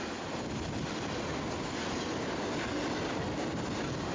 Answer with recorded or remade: recorded